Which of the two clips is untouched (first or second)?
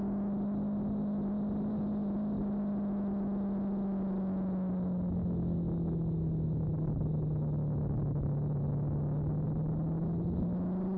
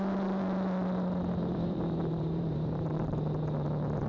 first